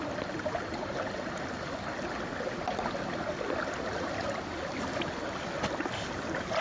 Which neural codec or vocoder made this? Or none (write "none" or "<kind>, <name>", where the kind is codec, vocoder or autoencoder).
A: none